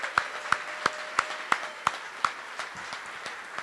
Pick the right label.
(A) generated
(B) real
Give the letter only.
B